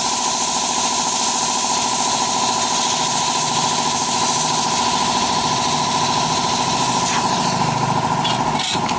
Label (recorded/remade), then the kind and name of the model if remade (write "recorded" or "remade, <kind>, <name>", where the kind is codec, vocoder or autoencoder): recorded